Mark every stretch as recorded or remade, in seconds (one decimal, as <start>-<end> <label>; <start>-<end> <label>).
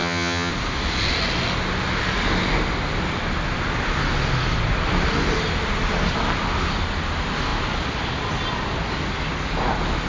0.0-0.5 remade; 0.5-10.1 recorded